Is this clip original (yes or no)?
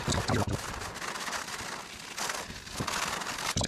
yes